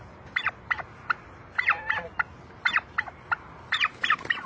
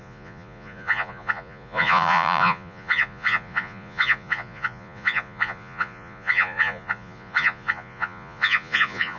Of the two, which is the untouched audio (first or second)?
first